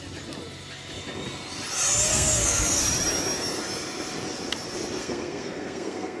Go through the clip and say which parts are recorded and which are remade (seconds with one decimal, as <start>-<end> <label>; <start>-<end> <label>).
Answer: 0.0-2.1 recorded; 2.1-2.8 remade; 2.8-5.0 recorded; 5.0-6.2 remade